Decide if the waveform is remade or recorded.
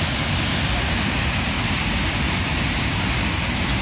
recorded